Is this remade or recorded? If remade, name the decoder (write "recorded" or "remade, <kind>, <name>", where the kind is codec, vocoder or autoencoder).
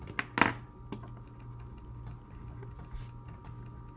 recorded